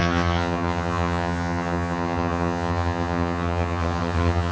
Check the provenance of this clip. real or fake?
fake